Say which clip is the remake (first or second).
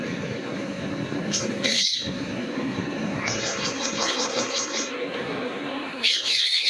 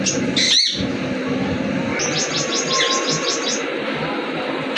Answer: first